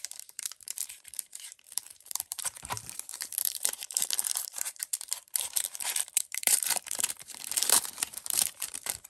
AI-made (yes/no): yes